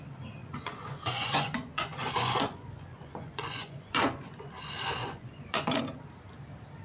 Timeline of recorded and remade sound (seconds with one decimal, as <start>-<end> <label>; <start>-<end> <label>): 0.0-0.4 recorded; 0.4-4.5 remade; 4.5-5.0 recorded; 5.0-5.8 remade; 5.8-6.8 recorded